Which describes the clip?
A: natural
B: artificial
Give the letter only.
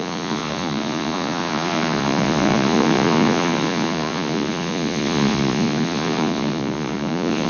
B